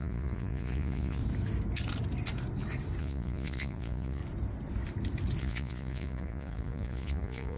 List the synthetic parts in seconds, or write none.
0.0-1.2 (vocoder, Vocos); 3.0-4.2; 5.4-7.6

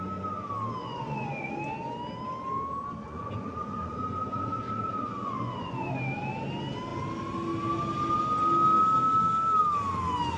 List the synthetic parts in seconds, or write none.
0.8-1.5 (vocoder, Vocos); 3.0-5.9

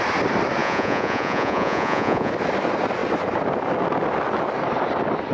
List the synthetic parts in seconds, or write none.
0.6-2.3 (vocoder, Vocos)

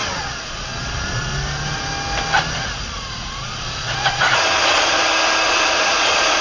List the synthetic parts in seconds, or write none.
0.0-1.3 (vocoder, Vocos); 3.1-5.0; 5.5-6.4

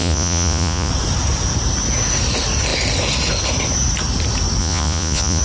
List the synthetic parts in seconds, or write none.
0.0-0.9 (vocoder, Vocos); 4.6-5.4

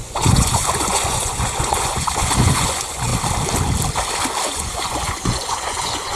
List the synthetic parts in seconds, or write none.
0.0-3.1 (vocoder, Vocos); 4.5-6.2